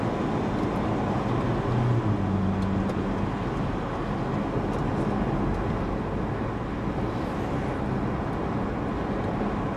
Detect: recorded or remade recorded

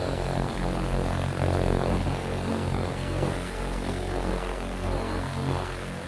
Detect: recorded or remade remade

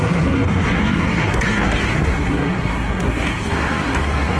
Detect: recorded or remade remade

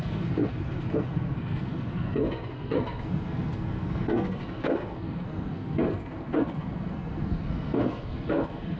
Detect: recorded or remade remade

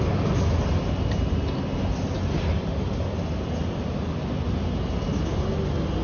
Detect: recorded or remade recorded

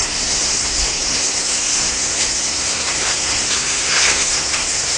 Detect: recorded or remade remade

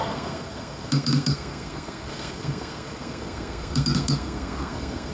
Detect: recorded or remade remade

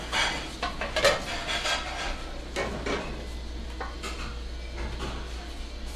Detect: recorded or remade recorded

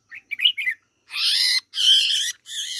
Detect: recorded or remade recorded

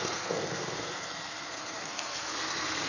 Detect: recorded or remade remade